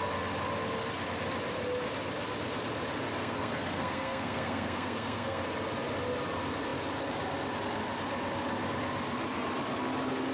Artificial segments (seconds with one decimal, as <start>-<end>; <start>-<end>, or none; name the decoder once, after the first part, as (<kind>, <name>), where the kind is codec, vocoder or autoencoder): 3.2-5.4 (codec, SNAC)